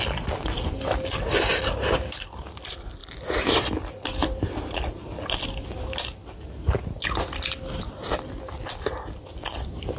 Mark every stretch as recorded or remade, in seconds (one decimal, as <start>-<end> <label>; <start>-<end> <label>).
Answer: 0.0-10.0 recorded